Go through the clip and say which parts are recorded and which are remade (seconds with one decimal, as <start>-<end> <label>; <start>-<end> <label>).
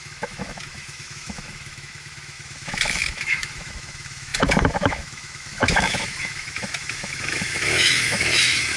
0.0-8.8 remade